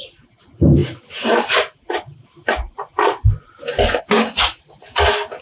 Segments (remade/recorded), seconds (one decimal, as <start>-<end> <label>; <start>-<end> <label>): 0.0-5.4 recorded